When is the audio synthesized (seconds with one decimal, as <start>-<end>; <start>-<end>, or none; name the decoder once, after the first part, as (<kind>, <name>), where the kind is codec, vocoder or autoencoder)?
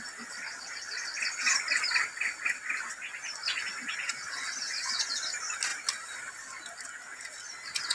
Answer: none